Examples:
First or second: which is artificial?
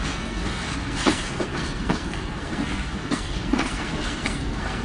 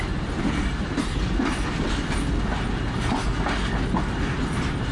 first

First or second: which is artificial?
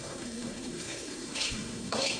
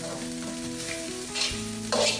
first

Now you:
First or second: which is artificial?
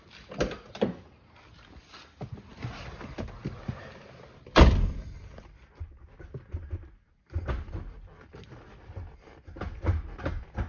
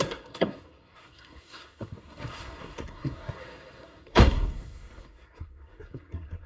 second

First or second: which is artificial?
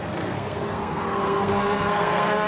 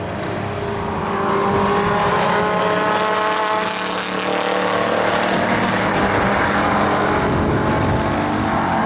first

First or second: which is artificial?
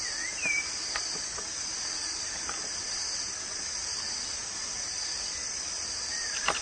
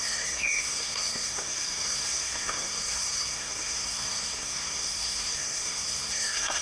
second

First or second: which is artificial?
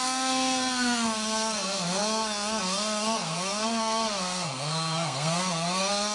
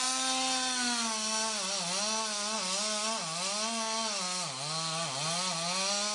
first